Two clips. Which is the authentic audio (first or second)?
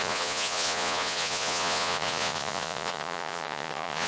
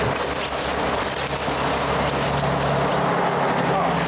second